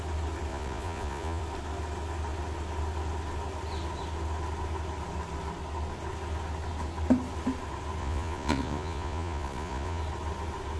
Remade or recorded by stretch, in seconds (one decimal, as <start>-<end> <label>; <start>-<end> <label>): 0.0-0.5 recorded; 0.5-1.4 remade; 1.4-8.0 recorded; 8.0-10.0 remade; 10.0-10.8 recorded